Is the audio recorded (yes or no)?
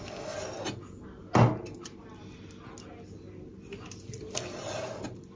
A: yes